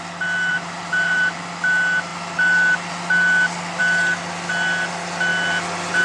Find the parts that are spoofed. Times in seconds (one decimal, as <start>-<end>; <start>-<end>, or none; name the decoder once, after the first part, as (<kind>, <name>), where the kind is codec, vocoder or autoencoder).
0.5-1.5 (vocoder, BigVGAN v2)